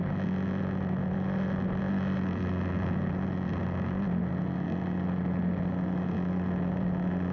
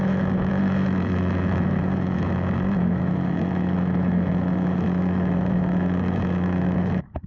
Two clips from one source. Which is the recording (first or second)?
first